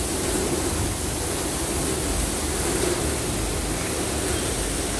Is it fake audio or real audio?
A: real